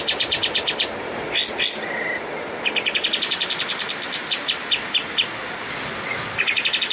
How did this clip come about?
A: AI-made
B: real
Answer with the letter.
B